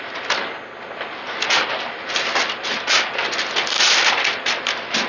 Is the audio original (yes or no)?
yes